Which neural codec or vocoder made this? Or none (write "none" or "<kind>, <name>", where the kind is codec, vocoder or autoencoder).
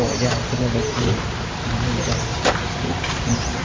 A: vocoder, BigVGAN v2